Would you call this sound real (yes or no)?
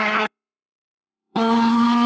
no